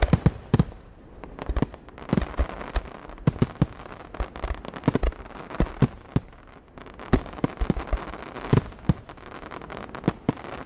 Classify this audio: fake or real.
real